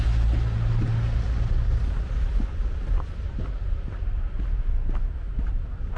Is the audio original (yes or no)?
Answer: yes